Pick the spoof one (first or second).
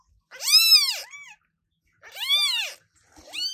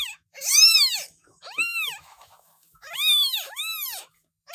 second